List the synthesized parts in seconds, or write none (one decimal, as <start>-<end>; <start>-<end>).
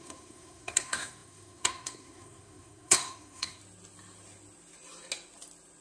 0.0-3.6